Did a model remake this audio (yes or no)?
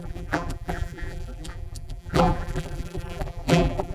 yes